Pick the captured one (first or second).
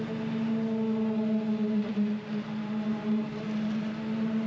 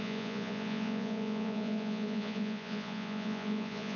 first